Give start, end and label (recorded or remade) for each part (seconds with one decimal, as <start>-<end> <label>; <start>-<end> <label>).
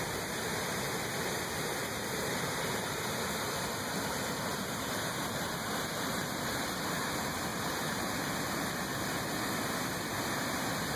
0.0-1.8 recorded; 1.8-6.8 remade; 6.8-7.5 recorded; 7.5-8.3 remade; 8.3-11.0 recorded